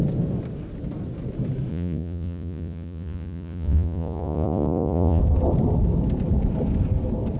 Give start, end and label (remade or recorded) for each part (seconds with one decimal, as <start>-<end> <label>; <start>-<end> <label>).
0.0-1.7 recorded; 1.7-5.2 remade; 5.2-7.4 recorded